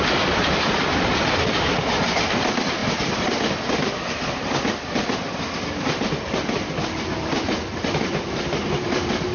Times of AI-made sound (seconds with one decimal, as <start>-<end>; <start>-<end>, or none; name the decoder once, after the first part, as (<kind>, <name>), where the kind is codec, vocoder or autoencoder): none